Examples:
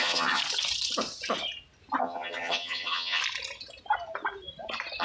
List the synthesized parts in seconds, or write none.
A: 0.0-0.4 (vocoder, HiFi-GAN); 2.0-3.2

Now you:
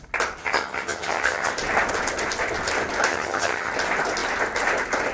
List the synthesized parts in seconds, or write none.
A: 0.4-1.5 (vocoder, HiFi-GAN); 3.1-3.7

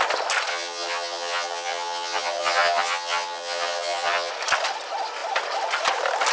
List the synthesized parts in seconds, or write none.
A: 0.5-4.3 (vocoder, HiFi-GAN)